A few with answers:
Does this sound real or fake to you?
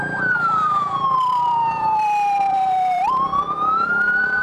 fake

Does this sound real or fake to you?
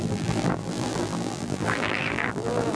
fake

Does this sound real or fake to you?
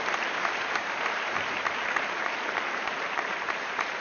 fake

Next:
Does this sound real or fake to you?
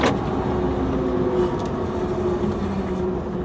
real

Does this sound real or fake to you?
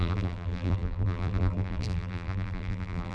fake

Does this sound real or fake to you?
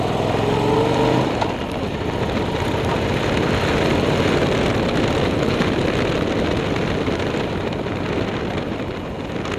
real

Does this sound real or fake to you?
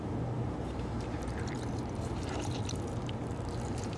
fake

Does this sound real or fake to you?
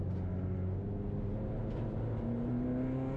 real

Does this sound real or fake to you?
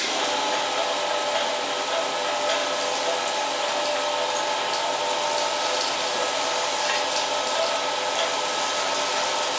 real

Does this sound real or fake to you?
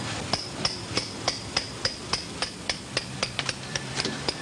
fake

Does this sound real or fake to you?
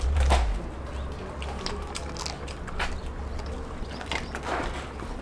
real